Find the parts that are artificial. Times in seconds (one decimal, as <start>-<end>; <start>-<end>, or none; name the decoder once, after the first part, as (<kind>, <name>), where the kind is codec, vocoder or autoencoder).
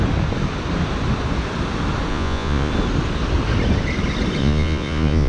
2.1-2.7 (vocoder, Vocos); 4.4-5.3